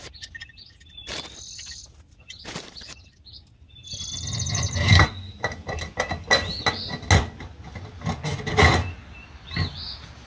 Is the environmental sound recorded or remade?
recorded